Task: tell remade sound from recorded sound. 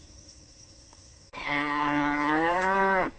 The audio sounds remade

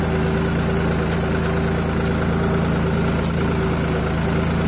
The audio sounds recorded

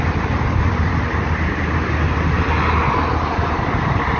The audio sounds recorded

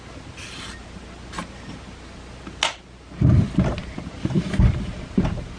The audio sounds recorded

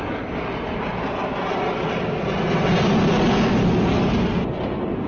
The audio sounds recorded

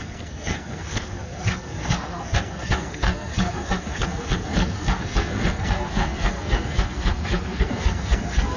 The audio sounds remade